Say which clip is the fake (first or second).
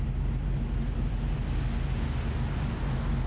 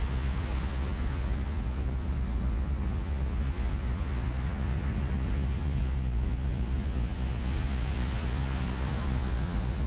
second